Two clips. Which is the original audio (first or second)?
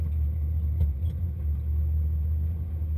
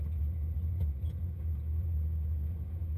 first